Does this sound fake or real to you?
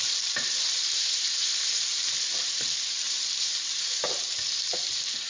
fake